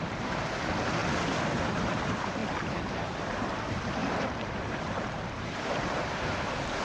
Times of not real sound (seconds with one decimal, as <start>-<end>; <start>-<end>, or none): 0.0-1.0; 1.6-2.4; 2.9-6.8